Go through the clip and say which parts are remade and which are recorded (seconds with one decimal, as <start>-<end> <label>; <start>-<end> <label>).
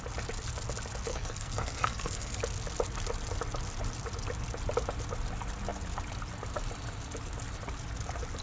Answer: 0.0-1.1 recorded; 1.1-2.4 remade; 2.4-8.4 recorded